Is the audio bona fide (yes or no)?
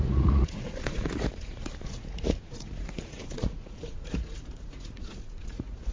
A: no